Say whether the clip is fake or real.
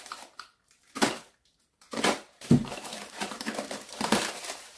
fake